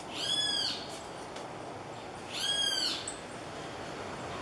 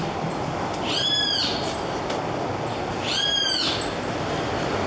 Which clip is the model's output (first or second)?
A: second